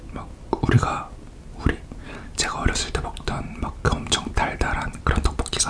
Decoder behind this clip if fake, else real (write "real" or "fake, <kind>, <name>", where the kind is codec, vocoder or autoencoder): real